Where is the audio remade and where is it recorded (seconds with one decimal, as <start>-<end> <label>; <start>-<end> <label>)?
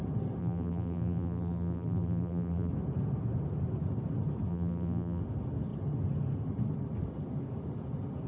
0.0-0.4 recorded; 0.4-2.7 remade; 2.7-4.5 recorded; 4.5-5.2 remade; 5.2-8.3 recorded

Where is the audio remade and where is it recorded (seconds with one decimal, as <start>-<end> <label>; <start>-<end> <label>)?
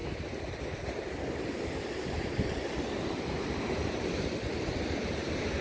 0.0-1.8 recorded; 1.8-5.6 remade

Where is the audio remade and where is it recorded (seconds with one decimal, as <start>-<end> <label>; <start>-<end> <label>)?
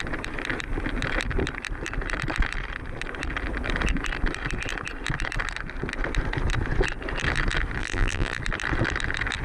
0.0-7.8 recorded; 7.8-8.4 remade; 8.4-9.4 recorded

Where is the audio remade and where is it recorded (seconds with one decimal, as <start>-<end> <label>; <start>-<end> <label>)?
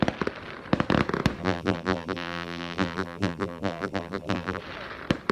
0.0-1.4 recorded; 1.4-4.6 remade; 4.6-5.3 recorded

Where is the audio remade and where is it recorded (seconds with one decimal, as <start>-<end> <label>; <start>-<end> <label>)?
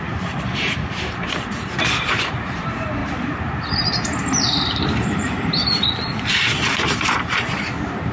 0.0-3.0 remade; 3.0-3.7 recorded; 3.7-8.1 remade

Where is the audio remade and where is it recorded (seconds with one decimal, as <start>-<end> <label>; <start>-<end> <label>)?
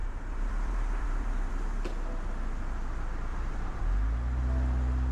0.0-1.5 remade; 1.5-3.3 recorded; 3.3-3.8 remade; 3.8-5.1 recorded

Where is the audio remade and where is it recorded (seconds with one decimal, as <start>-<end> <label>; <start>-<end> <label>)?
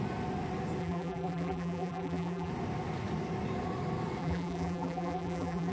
0.0-0.8 recorded; 0.8-2.5 remade; 2.5-4.2 recorded; 4.2-5.7 remade